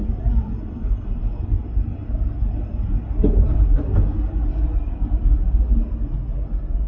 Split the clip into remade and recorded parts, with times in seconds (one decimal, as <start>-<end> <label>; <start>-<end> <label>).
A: 0.0-6.9 recorded